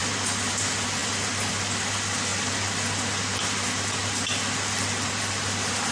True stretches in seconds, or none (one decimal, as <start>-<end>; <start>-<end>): 0.0-5.9